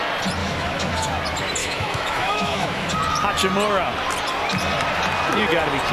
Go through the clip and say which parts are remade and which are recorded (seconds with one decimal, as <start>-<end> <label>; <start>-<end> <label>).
0.0-0.4 recorded; 0.4-1.1 remade; 1.1-1.6 recorded; 1.6-2.9 remade; 2.9-5.9 recorded